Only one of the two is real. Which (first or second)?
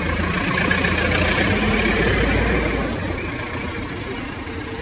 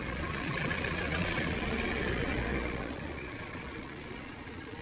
first